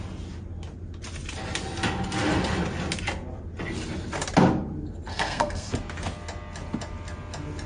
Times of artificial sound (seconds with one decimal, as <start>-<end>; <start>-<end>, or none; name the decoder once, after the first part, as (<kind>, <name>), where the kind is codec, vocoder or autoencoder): 5.1-5.7 (codec, SNAC)